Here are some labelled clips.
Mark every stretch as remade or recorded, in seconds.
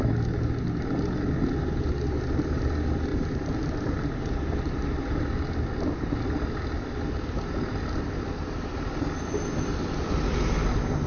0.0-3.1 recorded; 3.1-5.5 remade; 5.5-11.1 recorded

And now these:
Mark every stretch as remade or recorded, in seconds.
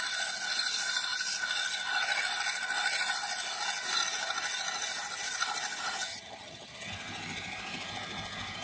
0.0-6.1 recorded; 6.1-6.9 remade; 6.9-8.6 recorded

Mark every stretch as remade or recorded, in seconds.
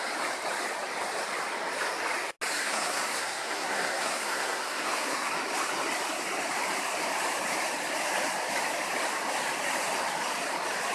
0.0-2.6 recorded; 2.6-5.3 remade; 5.3-10.9 recorded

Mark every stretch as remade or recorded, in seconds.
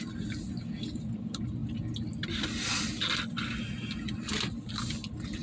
0.0-5.4 recorded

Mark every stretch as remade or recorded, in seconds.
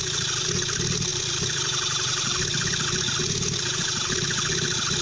0.0-5.0 recorded